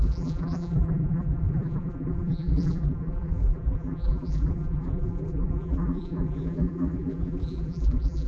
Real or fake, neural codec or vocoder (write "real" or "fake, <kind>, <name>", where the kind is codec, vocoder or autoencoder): fake, vocoder, BigVGAN v2